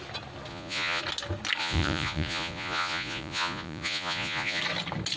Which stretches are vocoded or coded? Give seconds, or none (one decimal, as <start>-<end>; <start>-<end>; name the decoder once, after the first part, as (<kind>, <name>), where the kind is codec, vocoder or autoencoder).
0.5-1.0 (vocoder, Vocos); 1.6-4.6